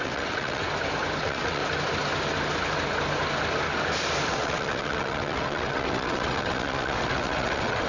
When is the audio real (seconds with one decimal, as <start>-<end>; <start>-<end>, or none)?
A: 0.6-1.2; 1.6-4.3